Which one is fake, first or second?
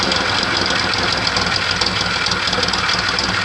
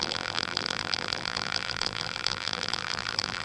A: second